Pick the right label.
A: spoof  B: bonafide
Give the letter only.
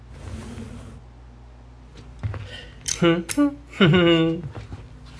B